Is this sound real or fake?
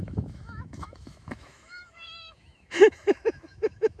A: fake